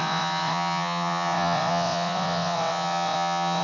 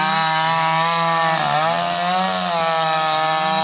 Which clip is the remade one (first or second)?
first